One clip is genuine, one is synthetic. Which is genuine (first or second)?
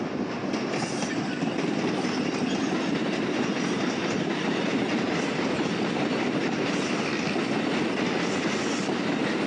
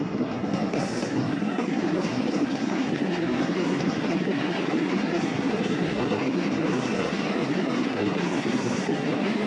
first